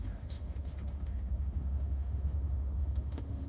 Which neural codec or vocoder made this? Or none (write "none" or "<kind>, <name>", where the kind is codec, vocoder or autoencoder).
autoencoder, DAC-VAE